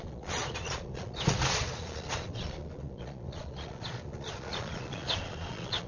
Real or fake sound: fake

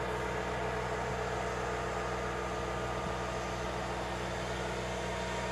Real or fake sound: real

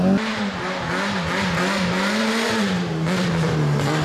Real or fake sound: real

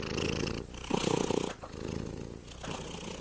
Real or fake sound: real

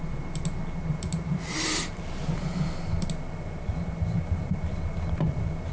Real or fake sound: real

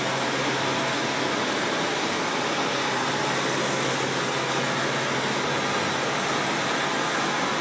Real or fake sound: real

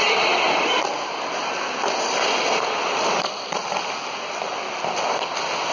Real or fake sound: real